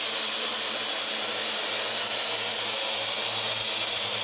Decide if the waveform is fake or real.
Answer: real